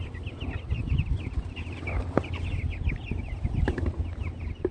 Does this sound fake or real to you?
fake